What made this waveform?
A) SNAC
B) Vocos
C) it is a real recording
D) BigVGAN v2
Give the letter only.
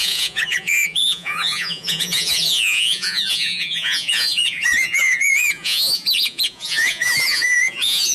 B